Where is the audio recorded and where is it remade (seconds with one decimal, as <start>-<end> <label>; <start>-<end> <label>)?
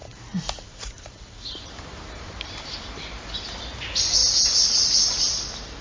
0.0-3.5 remade; 3.5-5.8 recorded